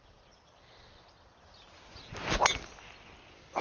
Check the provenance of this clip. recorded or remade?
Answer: recorded